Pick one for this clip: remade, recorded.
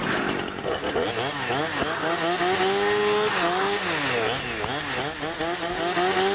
recorded